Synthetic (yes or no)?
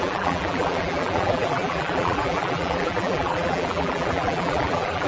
yes